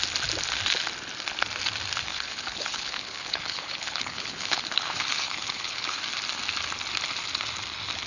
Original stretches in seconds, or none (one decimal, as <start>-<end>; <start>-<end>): 0.0-2.1; 6.0-8.1